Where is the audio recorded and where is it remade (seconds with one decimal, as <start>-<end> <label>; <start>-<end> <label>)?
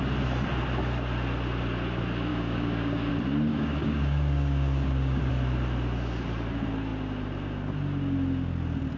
0.0-2.3 recorded; 2.3-3.1 remade; 3.1-3.5 recorded; 3.5-5.3 remade; 5.3-9.0 recorded